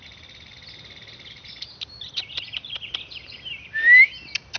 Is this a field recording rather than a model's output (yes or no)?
yes